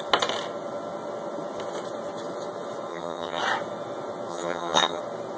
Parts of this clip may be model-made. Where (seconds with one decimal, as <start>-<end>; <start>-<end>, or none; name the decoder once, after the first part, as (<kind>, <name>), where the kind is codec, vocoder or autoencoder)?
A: 2.9-3.4 (vocoder, HiFi-GAN); 4.3-5.0